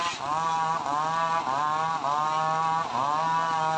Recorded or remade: recorded